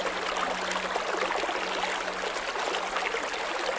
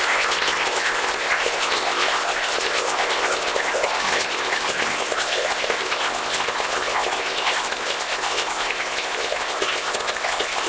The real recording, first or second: first